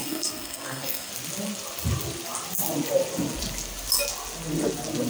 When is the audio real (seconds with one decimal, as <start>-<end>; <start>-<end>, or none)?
1.1-5.1